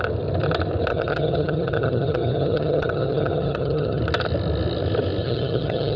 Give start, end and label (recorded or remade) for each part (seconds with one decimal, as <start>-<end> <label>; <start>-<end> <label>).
0.0-0.9 recorded; 0.9-4.0 remade; 4.0-5.2 recorded; 5.2-6.0 remade